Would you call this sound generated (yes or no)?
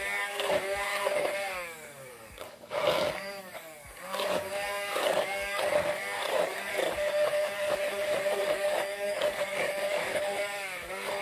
yes